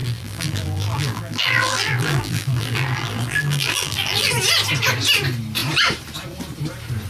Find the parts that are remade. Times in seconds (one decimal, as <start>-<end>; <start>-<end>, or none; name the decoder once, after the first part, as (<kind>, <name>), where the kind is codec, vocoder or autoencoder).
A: 0.0-4.3 (vocoder, BigVGAN v2)